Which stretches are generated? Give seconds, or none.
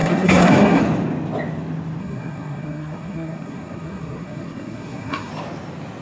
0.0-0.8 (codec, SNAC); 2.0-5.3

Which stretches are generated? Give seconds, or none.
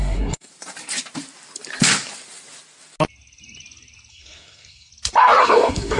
0.0-0.5 (codec, SNAC); 4.1-4.9; 5.4-6.0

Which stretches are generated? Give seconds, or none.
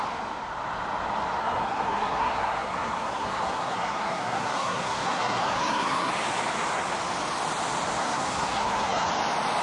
1.4-6.1 (codec, SNAC); 8.0-9.1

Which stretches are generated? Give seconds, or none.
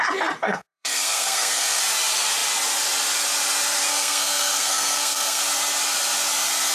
0.4-1.8 (codec, SNAC); 3.9-5.4